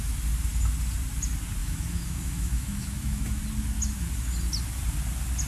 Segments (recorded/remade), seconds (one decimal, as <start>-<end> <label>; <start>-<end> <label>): 0.0-1.6 recorded; 1.6-3.4 remade; 3.4-5.5 recorded